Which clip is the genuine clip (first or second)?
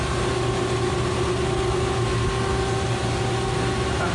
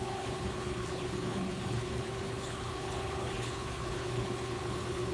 first